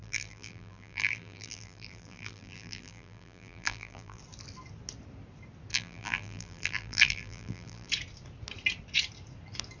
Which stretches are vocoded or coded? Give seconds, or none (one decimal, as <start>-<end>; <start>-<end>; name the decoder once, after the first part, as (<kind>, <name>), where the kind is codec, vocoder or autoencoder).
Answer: 0.0-4.2 (vocoder, BigVGAN v2); 5.7-7.9